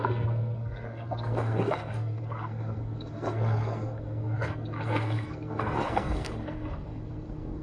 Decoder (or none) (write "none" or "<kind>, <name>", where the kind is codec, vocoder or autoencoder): codec, SNAC